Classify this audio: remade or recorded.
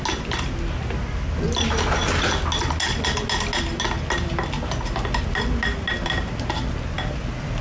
recorded